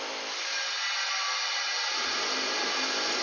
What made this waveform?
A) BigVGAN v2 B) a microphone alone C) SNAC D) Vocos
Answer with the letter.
B